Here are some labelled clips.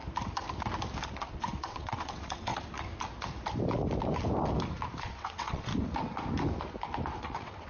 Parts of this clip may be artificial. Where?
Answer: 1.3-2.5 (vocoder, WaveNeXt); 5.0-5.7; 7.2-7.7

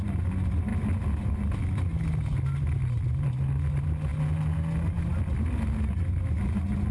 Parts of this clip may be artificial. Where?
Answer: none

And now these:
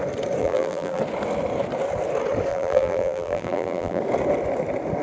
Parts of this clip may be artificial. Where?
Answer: 0.4-1.0 (vocoder, BigVGAN v2); 2.5-4.0

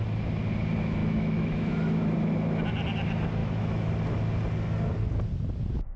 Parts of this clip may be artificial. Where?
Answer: 1.0-2.0 (autoencoder, DAC-VAE); 3.4-3.9

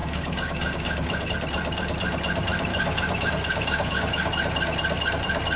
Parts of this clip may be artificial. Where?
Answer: 0.0-1.3 (codec, DAC); 2.7-4.3

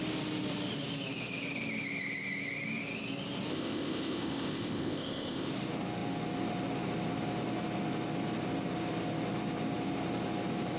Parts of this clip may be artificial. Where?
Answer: 3.5-5.5 (codec, ZipCodec)

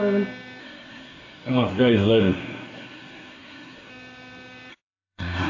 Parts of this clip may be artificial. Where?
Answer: 0.6-3.9 (codec, SNAC); 4.7-5.5